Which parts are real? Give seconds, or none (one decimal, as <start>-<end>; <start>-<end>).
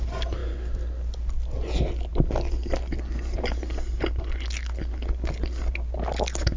0.0-6.6